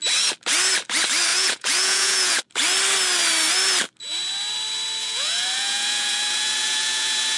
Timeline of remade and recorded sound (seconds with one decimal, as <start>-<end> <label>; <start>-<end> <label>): 0.0-1.3 recorded; 1.3-2.4 remade; 2.4-5.0 recorded; 5.0-7.4 remade